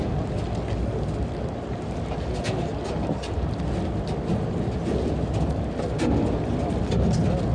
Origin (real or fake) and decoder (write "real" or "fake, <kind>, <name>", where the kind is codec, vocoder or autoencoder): real